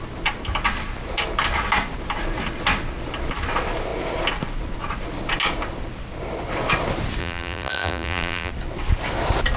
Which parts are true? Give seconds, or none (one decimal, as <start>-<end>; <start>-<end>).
0.0-7.2; 8.5-9.6